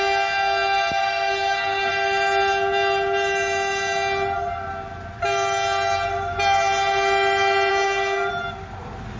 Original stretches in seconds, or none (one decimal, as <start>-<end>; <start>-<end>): 0.0-1.0; 1.9-7.7; 8.3-9.2